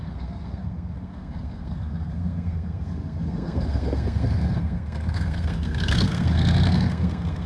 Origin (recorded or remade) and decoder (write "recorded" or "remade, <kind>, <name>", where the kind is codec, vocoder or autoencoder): remade, codec, SNAC